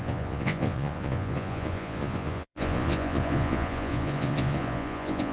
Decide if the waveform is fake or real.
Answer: fake